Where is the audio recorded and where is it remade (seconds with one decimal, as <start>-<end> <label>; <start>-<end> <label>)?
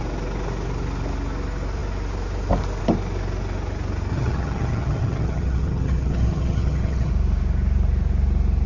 0.0-4.1 recorded; 4.1-7.1 remade; 7.1-8.7 recorded